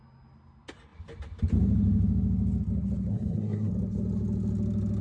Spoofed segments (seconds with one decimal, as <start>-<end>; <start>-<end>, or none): 3.1-3.7